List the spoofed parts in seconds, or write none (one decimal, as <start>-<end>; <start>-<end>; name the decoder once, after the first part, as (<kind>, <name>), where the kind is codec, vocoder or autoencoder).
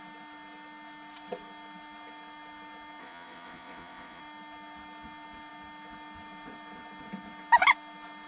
3.0-4.2 (vocoder, Vocos)